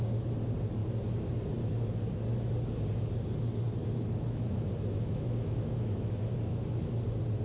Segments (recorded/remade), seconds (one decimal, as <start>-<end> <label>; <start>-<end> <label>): 0.0-3.8 recorded; 3.8-6.9 remade; 6.9-7.4 recorded